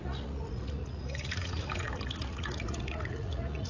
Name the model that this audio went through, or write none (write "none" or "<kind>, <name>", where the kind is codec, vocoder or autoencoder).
vocoder, Vocos